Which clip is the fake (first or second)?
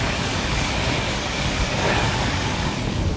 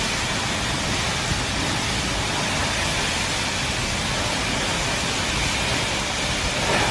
first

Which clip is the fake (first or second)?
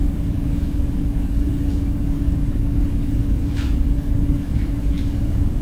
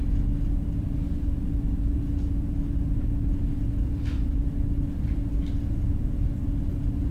first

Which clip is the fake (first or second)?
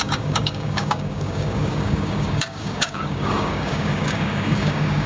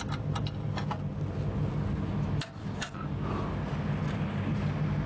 first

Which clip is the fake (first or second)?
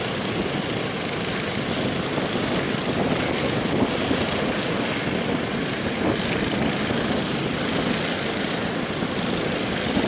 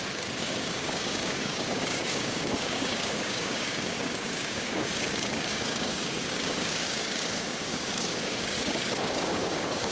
second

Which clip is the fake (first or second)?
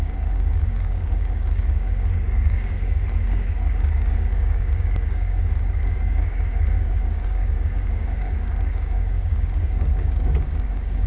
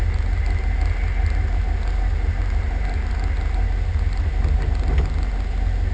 first